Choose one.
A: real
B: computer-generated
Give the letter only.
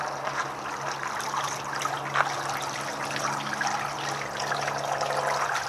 A